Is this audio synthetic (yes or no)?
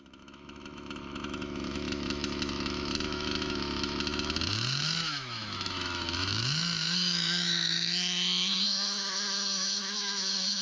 yes